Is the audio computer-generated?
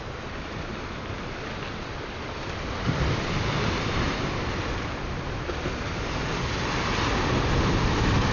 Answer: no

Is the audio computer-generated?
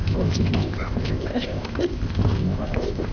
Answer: yes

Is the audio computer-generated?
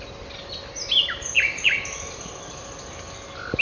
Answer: no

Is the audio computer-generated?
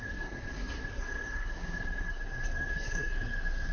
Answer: yes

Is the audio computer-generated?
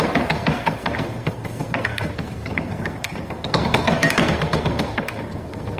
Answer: yes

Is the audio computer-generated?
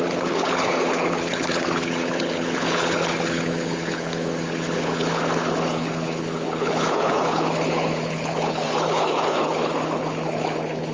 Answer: yes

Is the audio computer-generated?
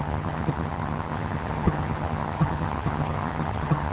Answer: yes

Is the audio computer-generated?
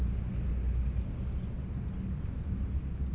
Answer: no